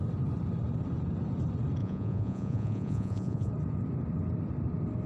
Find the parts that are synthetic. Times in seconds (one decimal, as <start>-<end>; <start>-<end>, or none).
1.8-3.5